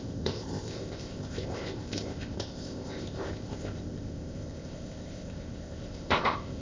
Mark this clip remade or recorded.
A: remade